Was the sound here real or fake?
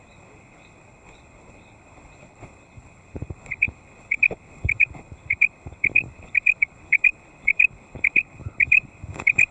fake